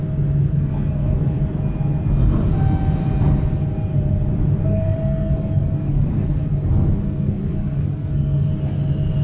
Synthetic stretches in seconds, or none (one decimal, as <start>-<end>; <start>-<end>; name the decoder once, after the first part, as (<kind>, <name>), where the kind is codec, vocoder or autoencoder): 0.5-1.4 (codec, SNAC); 4.7-8.5